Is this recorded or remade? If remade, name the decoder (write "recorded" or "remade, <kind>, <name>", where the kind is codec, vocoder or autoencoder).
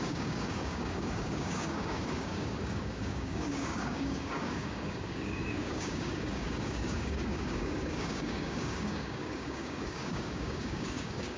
remade, codec, DAC